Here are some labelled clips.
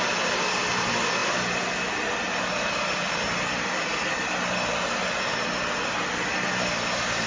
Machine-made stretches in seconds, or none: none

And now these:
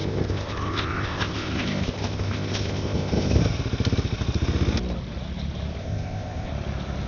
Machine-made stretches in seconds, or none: 0.0-3.4 (codec, ZipCodec); 5.8-6.5

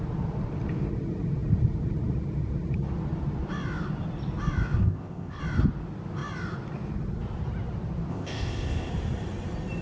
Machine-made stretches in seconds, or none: 4.8-5.4 (codec, ZipCodec); 8.1-8.9

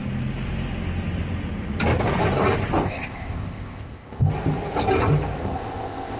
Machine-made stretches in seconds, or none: 2.8-4.3 (codec, ZipCodec); 5.4-6.2

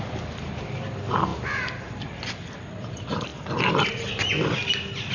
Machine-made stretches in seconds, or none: none

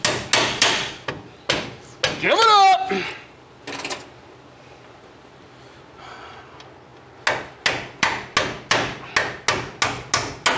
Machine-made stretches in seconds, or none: none

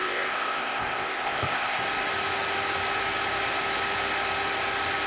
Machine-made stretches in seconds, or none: 0.0-1.8 (codec, ZipCodec)